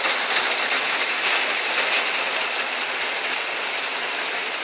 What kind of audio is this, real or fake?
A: real